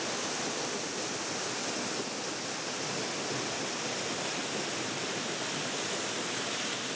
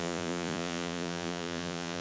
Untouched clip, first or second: first